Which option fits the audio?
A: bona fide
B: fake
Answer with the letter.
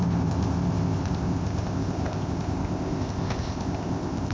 B